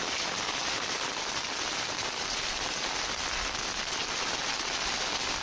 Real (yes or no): yes